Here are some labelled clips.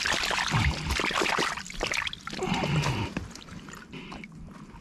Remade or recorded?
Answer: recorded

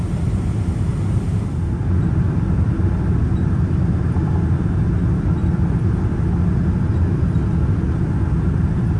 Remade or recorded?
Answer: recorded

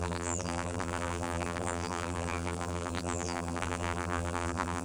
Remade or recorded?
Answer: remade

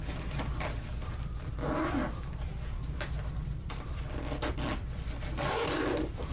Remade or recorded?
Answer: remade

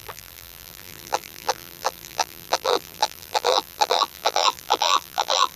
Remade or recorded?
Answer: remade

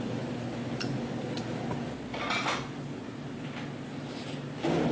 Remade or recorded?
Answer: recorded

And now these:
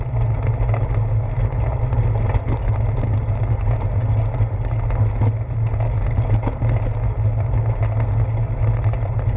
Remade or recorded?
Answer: recorded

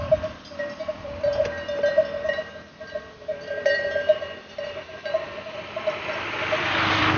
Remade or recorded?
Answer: remade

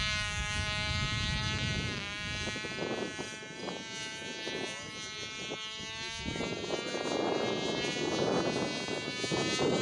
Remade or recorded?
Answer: recorded